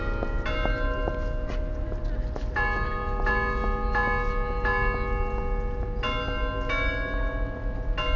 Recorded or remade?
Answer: recorded